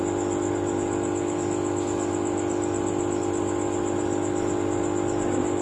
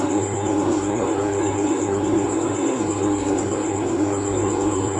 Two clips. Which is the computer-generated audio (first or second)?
second